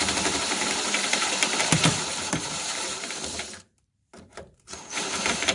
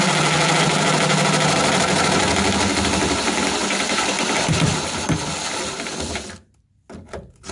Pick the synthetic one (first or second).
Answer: first